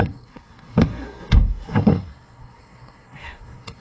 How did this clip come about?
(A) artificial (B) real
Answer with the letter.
A